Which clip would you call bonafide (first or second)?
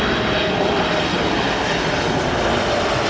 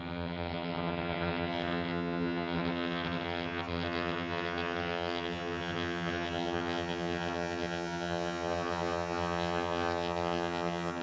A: first